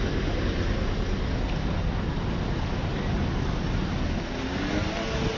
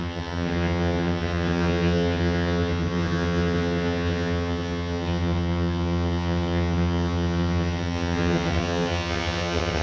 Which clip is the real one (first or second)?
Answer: first